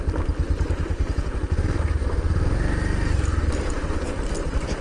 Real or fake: real